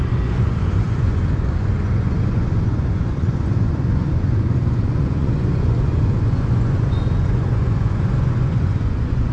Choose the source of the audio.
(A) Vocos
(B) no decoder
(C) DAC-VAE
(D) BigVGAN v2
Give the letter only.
A